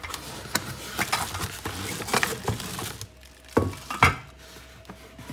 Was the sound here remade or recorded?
recorded